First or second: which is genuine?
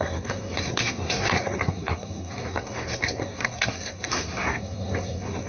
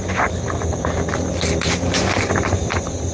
second